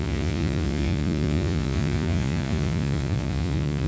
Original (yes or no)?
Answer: no